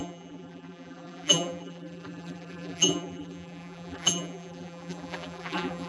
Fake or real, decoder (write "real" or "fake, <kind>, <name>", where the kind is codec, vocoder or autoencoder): fake, vocoder, BigVGAN v2